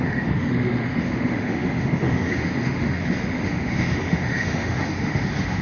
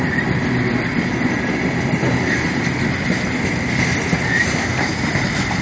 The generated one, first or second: first